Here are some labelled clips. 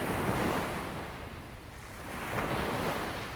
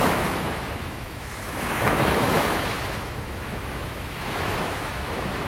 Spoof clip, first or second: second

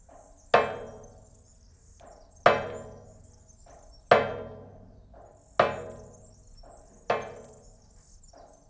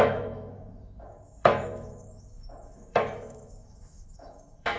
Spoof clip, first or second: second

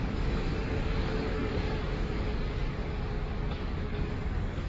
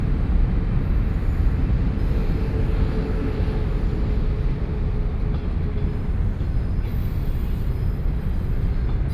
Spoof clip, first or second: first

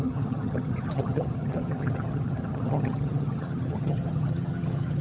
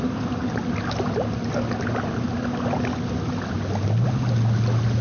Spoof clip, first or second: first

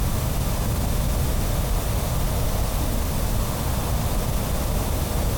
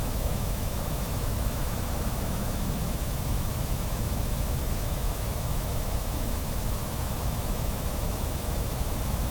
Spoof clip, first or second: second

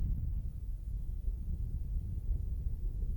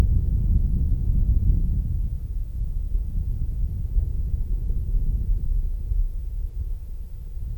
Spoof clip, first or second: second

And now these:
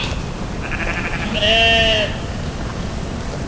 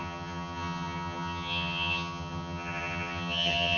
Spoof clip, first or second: second